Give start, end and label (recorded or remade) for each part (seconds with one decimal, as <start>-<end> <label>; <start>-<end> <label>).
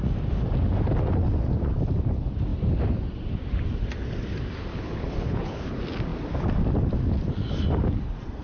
0.0-4.7 recorded; 4.7-5.6 remade; 5.6-8.4 recorded